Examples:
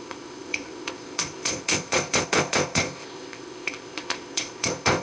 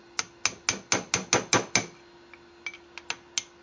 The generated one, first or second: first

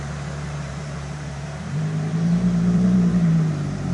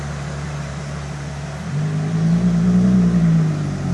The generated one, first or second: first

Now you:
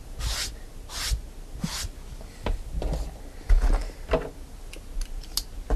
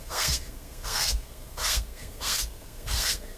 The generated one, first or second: second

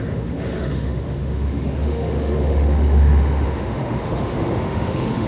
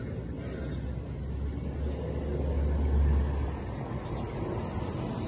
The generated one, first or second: first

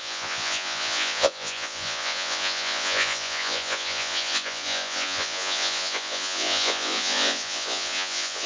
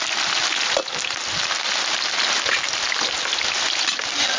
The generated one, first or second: first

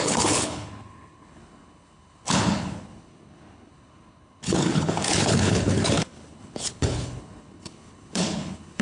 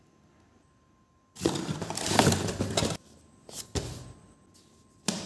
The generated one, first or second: first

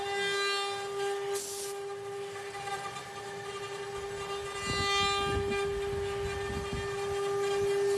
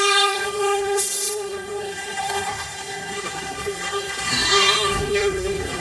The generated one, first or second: second